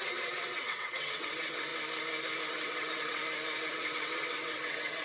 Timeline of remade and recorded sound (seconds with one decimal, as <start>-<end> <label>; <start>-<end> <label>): 0.0-1.7 remade; 1.7-2.5 recorded; 2.5-3.2 remade; 3.2-3.7 recorded; 3.7-5.0 remade